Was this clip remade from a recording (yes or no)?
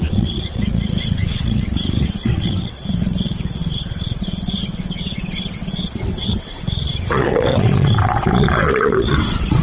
yes